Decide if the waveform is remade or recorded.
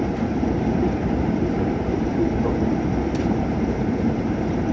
remade